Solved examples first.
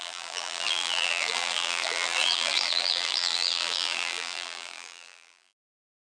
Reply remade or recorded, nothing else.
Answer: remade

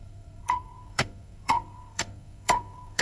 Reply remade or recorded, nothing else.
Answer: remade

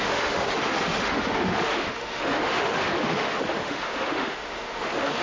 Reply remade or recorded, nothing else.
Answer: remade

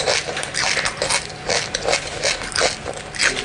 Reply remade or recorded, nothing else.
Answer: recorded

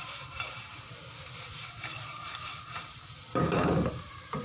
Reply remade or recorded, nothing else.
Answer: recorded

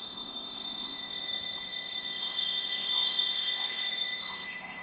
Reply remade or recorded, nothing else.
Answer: remade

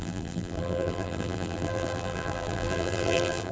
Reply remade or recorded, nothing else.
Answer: remade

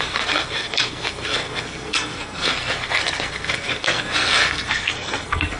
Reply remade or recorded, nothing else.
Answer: remade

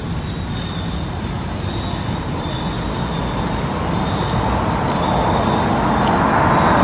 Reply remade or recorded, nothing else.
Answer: recorded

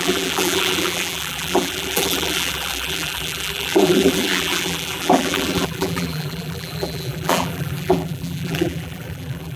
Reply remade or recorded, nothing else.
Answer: remade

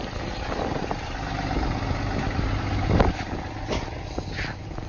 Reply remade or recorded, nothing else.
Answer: recorded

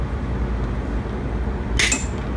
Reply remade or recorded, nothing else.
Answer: recorded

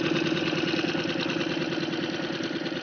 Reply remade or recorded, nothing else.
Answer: recorded